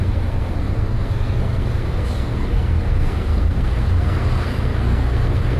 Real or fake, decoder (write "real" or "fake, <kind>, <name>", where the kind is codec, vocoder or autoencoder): fake, codec, SNAC